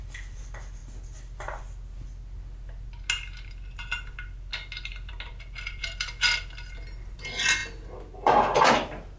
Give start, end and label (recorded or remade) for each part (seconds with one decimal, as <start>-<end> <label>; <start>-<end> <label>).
0.0-9.2 recorded